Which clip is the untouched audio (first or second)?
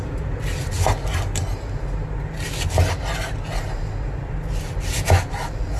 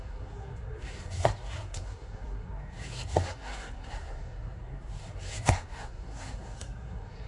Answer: first